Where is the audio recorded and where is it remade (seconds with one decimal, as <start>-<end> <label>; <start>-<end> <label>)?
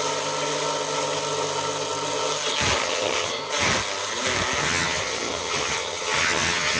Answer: 0.0-2.8 recorded; 2.8-3.3 remade; 3.3-4.6 recorded; 4.6-6.8 remade